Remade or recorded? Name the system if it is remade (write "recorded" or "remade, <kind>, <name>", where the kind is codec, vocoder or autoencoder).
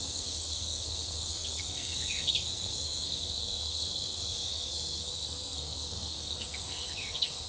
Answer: remade, codec, SNAC